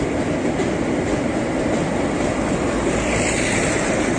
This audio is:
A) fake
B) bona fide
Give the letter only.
A